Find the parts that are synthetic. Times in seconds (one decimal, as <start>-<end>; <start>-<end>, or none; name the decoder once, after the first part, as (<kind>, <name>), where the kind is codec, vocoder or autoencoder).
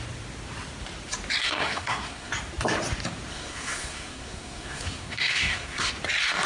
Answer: 1.4-2.3 (codec, SNAC); 3.3-5.9